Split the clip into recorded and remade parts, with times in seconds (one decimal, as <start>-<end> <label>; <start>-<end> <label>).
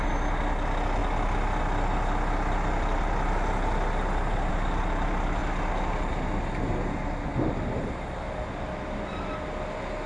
0.0-10.1 recorded